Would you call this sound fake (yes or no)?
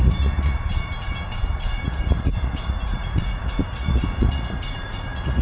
yes